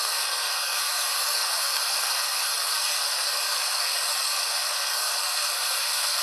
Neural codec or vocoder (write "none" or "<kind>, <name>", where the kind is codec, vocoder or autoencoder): codec, SNAC